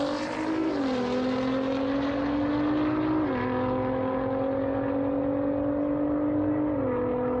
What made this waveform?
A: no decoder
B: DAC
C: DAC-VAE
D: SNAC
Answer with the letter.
A